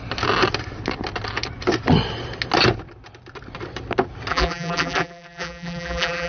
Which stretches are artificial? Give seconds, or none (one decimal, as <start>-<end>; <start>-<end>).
4.3-6.3